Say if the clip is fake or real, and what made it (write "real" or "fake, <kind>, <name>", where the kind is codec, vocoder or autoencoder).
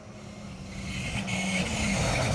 real